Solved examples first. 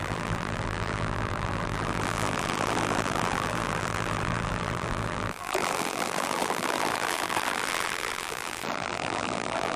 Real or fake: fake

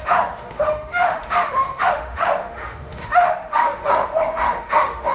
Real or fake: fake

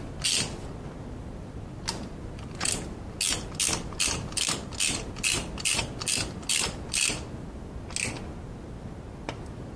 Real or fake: real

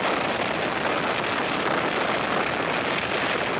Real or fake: real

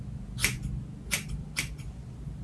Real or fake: real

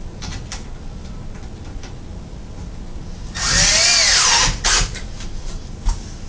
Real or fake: real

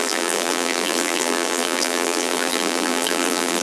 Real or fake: fake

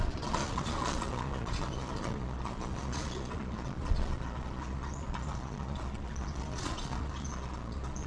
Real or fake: fake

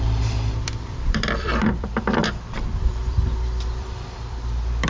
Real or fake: fake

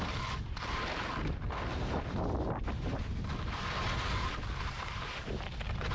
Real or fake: real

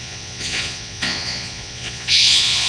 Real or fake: fake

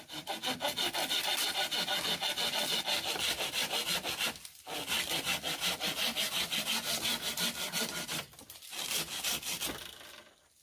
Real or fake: real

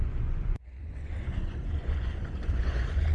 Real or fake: fake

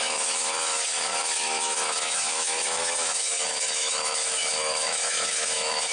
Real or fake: fake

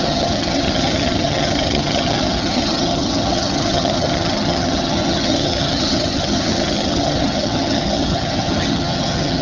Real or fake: fake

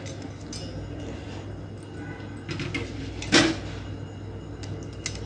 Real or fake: real